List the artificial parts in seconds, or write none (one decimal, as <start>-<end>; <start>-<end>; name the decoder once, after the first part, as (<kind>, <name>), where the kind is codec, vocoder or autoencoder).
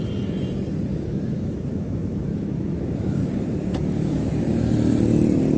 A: 0.9-4.3 (autoencoder, DAC-VAE)